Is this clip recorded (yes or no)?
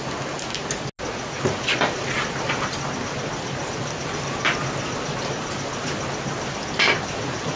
yes